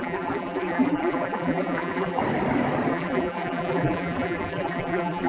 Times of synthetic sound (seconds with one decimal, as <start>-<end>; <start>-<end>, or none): 0.0-2.2; 2.9-5.3